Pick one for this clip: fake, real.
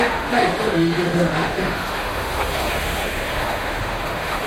fake